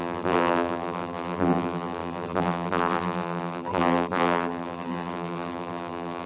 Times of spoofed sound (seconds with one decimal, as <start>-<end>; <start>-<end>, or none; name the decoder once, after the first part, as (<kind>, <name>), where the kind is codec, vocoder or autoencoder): 0.0-6.3 (vocoder, BigVGAN v2)